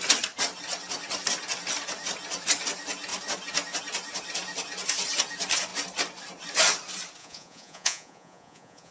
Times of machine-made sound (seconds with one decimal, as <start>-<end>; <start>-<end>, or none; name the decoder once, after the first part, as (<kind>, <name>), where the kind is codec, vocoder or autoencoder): 7.2-8.9 (vocoder, Vocos)